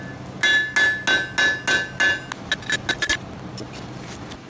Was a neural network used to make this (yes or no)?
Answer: no